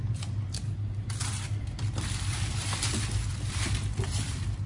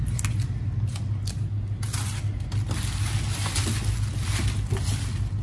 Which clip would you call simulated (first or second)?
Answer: first